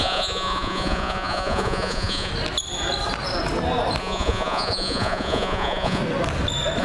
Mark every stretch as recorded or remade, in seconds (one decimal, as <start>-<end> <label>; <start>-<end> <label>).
0.0-2.3 remade; 2.3-4.0 recorded; 4.0-6.0 remade; 6.0-6.8 recorded